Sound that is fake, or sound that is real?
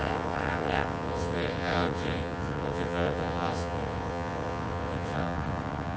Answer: fake